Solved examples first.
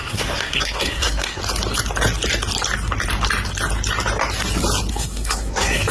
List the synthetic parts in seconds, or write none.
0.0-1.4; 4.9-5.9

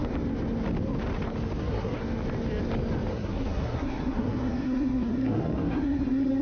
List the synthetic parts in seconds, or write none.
1.6-2.0; 3.1-6.4

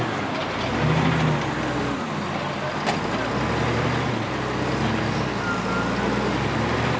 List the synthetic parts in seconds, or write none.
none

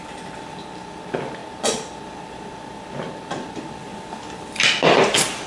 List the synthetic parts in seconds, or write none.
none

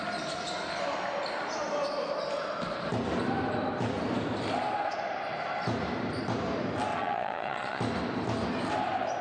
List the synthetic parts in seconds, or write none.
6.9-7.8